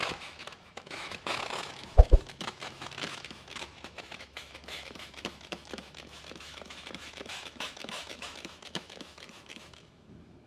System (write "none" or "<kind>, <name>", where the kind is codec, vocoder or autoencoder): autoencoder, DAC-VAE